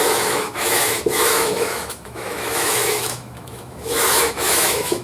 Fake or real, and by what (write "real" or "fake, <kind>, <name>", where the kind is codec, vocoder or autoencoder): fake, autoencoder, DAC-VAE